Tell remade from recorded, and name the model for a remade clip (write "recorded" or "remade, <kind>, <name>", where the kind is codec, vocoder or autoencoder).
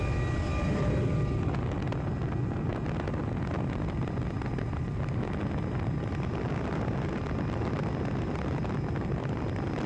recorded